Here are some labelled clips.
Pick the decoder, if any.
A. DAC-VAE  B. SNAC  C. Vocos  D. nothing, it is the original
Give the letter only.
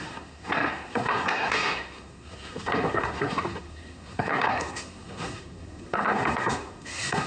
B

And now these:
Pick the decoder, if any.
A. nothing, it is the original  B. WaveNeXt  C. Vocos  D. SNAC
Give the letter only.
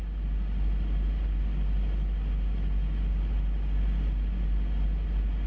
A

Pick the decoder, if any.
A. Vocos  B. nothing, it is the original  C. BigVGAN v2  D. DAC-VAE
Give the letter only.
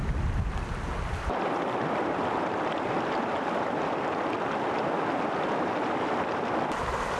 B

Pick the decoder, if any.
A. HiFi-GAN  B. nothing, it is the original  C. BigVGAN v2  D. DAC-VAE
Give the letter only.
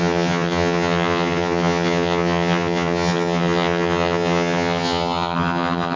A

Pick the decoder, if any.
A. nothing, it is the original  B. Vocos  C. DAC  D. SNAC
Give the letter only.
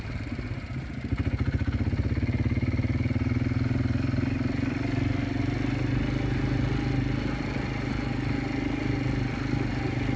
A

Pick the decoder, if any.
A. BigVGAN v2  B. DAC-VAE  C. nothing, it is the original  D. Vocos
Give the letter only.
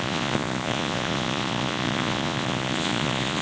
D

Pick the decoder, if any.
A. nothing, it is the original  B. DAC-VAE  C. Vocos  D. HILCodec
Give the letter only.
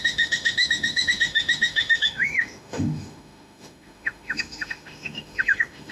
B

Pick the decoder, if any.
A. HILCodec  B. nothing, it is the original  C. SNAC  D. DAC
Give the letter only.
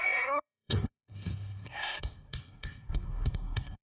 C